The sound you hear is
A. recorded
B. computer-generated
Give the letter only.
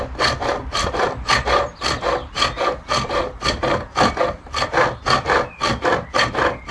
A